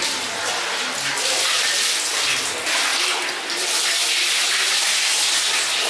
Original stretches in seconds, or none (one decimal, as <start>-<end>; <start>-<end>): 0.0-5.9

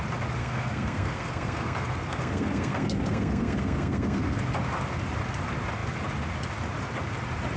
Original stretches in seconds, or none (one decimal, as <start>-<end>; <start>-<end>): 0.0-0.4; 4.4-7.6